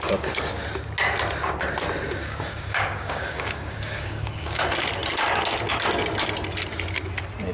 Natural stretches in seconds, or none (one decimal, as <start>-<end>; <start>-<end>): 0.0-2.2; 4.6-7.5